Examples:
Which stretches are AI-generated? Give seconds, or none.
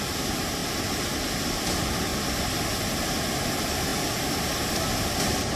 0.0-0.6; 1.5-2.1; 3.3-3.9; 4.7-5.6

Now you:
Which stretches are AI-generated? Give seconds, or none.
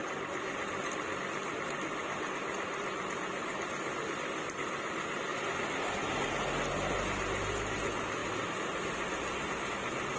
none